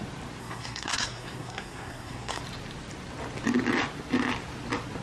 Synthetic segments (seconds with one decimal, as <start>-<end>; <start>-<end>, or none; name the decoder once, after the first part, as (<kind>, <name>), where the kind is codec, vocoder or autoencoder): 0.4-2.4 (codec, SNAC)